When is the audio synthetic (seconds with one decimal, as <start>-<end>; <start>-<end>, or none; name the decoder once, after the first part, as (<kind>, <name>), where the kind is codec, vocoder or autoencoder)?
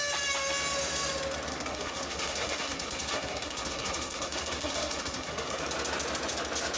1.5-5.6 (codec, SNAC)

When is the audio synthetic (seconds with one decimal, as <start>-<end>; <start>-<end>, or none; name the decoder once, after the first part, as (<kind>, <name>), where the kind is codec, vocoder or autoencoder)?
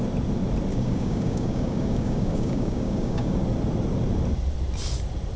0.7-3.4 (codec, DAC)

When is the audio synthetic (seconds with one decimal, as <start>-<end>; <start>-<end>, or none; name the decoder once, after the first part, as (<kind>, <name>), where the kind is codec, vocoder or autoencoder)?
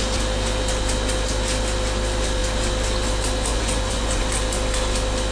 3.5-4.2 (vocoder, Vocos)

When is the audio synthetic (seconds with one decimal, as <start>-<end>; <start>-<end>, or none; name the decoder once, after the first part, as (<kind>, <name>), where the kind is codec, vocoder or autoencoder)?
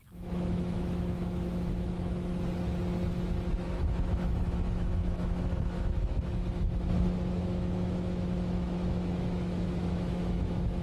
0.0-2.3 (autoencoder, DAC-VAE); 3.6-10.8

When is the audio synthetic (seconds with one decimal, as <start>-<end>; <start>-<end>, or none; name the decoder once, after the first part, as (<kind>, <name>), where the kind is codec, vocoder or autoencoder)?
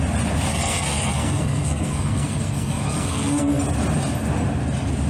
0.5-3.6 (codec, SNAC)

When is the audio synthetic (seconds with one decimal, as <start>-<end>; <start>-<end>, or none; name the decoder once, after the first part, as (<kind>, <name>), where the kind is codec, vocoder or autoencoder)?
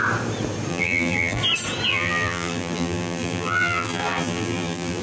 0.7-1.4 (vocoder, BigVGAN v2); 1.9-5.0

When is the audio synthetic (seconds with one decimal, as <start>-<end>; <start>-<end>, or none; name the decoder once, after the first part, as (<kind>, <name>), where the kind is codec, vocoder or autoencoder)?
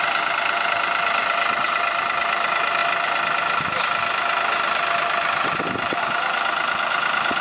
none